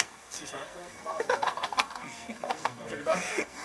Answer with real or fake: fake